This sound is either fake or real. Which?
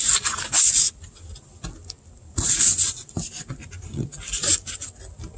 real